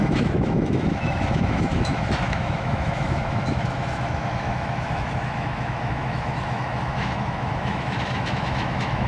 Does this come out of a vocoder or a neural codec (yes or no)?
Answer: yes